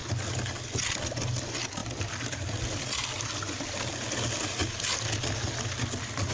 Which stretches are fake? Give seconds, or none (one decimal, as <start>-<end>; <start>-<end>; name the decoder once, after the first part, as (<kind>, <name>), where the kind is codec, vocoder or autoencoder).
1.8-3.9 (vocoder, BigVGAN v2)